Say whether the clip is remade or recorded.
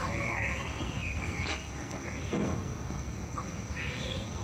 remade